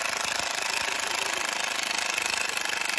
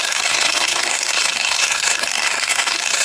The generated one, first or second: second